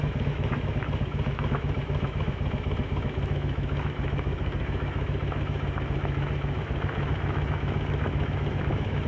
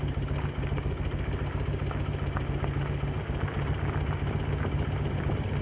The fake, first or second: first